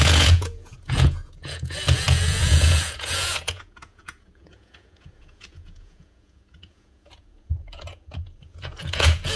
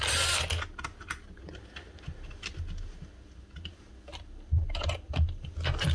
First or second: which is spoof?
first